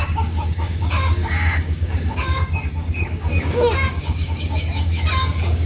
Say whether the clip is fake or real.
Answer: fake